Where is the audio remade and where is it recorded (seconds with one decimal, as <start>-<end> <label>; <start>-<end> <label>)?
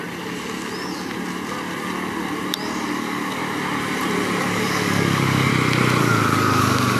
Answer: 0.0-2.9 recorded; 2.9-3.4 remade; 3.4-4.4 recorded; 4.4-5.5 remade; 5.5-6.0 recorded; 6.0-7.0 remade